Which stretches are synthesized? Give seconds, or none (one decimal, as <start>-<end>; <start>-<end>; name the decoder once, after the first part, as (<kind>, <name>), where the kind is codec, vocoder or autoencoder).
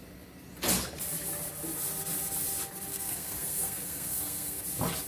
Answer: 2.9-4.6 (codec, SNAC)